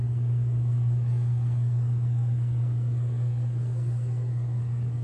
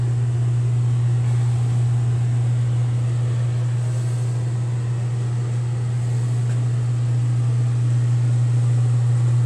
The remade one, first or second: first